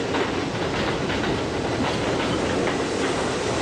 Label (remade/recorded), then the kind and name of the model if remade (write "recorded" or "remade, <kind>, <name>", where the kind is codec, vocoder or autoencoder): recorded